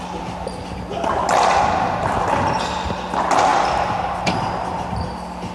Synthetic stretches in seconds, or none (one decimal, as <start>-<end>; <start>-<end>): none